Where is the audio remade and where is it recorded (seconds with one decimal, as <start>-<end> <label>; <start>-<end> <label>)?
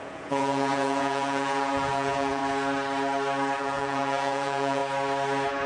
0.0-2.4 remade; 2.4-3.6 recorded; 3.6-4.8 remade; 4.8-5.7 recorded